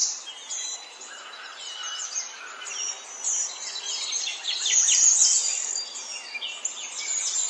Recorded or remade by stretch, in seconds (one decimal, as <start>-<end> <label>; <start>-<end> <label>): 0.0-2.4 remade; 2.4-4.3 recorded; 4.3-5.7 remade; 5.7-7.5 recorded